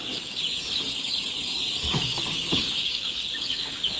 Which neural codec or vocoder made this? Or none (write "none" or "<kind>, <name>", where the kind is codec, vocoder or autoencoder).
codec, DAC